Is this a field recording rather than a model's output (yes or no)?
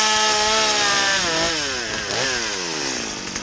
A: yes